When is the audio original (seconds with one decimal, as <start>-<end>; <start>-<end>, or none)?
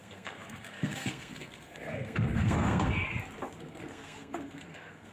2.9-3.6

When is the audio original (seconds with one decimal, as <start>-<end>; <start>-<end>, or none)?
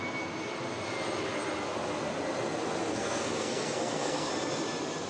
0.0-2.9; 4.3-5.1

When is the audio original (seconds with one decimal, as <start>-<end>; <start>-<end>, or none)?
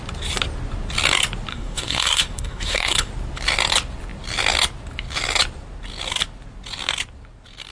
0.0-1.5; 3.1-7.7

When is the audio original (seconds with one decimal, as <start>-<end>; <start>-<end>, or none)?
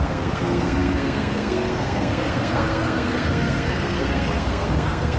none